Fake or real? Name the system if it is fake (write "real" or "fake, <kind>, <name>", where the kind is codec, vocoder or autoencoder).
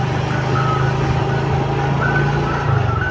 real